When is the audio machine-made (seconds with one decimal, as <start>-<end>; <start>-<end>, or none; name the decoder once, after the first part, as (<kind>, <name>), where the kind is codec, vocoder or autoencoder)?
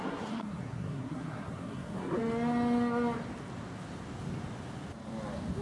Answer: 0.0-2.2 (codec, SNAC)